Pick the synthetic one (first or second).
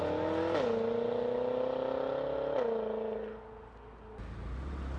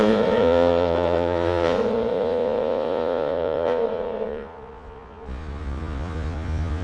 second